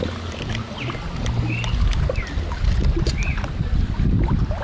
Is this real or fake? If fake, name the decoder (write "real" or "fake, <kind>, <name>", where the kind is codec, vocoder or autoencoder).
real